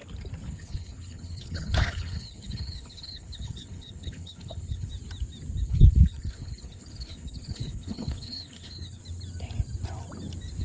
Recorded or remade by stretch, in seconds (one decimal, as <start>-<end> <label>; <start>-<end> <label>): 0.0-0.5 recorded; 0.5-4.9 remade; 4.9-5.6 recorded; 5.6-9.0 remade; 9.0-10.6 recorded